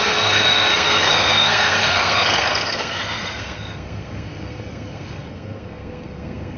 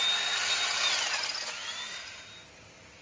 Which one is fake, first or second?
first